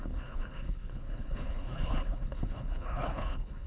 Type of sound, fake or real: fake